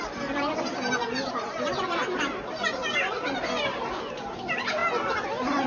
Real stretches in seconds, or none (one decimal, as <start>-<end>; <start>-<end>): 0.0-5.7